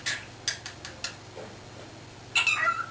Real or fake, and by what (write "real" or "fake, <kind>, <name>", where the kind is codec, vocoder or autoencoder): real